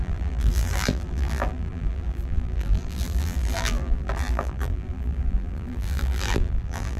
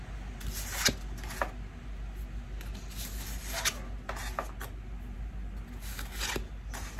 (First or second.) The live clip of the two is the second